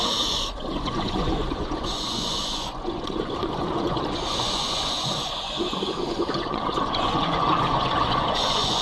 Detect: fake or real fake